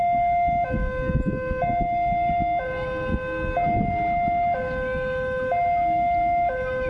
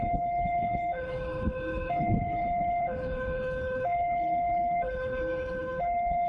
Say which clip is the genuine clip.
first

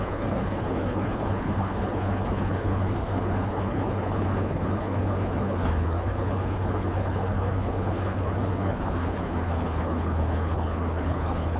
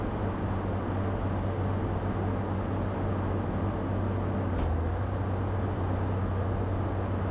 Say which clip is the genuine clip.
second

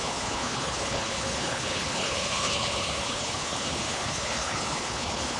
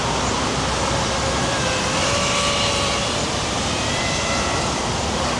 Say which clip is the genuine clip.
second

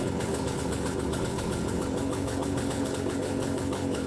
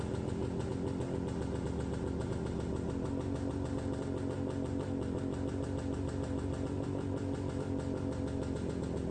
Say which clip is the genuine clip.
second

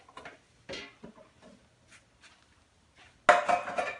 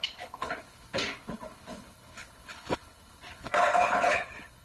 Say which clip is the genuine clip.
first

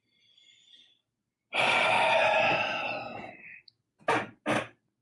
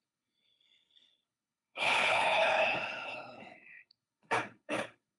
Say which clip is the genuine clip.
first